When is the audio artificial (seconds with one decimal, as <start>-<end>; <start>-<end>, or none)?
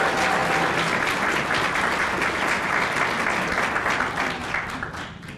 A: none